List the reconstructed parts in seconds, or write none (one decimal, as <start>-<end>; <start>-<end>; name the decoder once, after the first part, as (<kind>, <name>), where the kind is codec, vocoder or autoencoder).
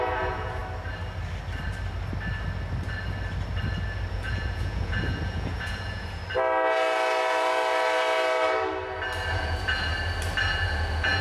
0.0-0.6 (vocoder, Vocos); 4.1-6.2; 9.3-9.9; 10.4-11.2